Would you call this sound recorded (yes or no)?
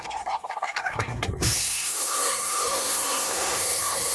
no